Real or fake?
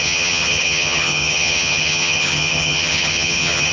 fake